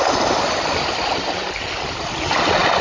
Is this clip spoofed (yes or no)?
no